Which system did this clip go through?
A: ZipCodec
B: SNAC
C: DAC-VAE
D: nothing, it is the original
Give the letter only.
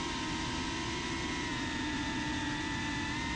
D